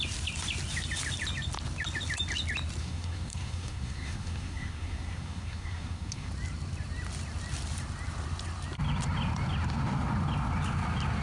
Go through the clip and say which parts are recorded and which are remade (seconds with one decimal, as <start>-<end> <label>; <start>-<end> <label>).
0.0-2.8 recorded; 2.8-6.3 remade; 6.3-11.2 recorded